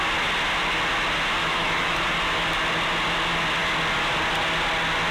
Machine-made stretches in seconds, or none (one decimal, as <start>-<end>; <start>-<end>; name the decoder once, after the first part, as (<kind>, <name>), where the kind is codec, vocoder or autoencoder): 1.4-2.0 (autoencoder, DAC-VAE)